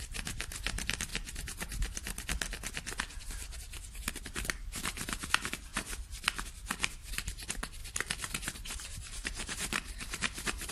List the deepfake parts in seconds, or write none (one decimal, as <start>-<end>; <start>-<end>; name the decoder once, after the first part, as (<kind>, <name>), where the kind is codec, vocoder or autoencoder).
0.0-1.1 (vocoder, BigVGAN v2); 4.1-5.7; 7.1-10.7